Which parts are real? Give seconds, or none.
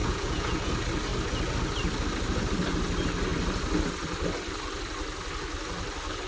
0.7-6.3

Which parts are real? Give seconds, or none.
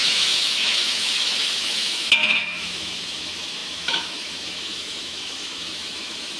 none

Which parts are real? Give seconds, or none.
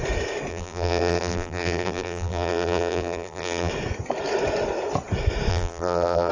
0.0-0.5; 3.7-5.5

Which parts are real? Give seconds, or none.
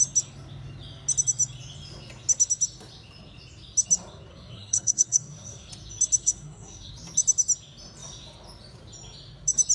0.0-4.3; 5.7-6.2; 6.9-9.7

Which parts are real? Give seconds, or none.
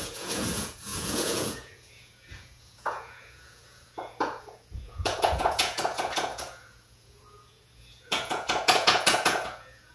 none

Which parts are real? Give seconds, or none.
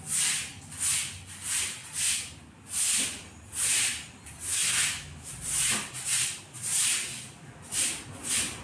0.0-4.5; 5.3-8.6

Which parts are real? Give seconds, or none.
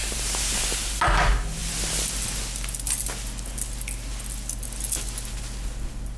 1.0-6.2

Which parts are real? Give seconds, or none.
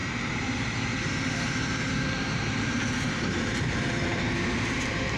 none